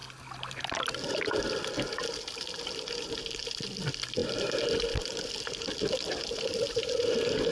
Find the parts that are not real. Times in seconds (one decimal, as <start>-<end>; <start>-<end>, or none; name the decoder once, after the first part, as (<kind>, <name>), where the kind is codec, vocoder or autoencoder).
2.6-7.5 (vocoder, BigVGAN v2)